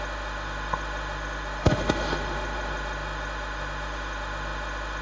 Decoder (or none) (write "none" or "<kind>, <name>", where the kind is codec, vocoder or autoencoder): autoencoder, DAC-VAE